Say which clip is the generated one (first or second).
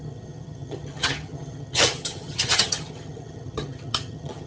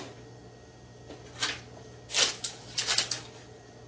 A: first